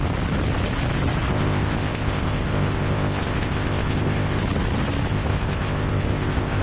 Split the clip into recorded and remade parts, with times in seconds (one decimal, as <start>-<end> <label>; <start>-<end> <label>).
0.0-1.3 recorded; 1.3-4.4 remade; 4.4-5.1 recorded; 5.1-6.6 remade